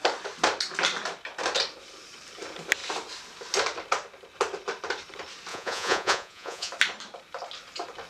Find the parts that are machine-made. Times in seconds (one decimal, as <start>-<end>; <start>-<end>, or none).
5.5-6.7